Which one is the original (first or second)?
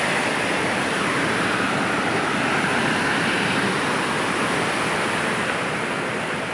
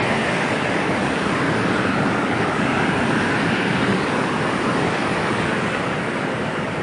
first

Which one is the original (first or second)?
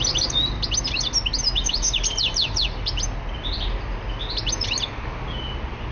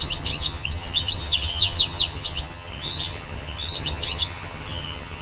first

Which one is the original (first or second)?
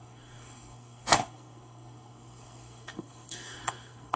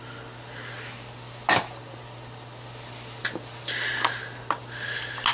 second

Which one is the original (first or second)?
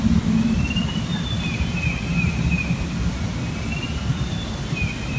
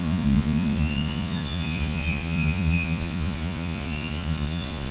first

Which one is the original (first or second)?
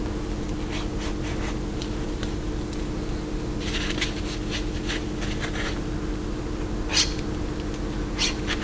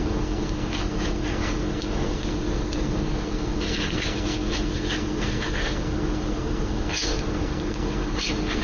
first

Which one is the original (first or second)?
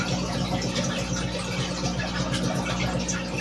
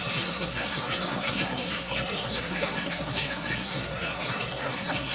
first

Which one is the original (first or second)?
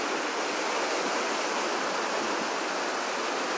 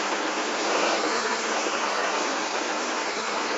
first